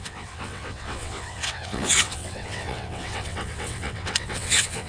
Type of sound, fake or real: fake